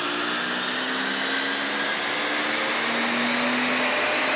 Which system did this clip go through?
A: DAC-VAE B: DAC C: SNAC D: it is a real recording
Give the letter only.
D